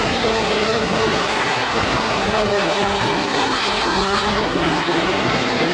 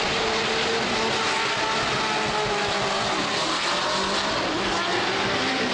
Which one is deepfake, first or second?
first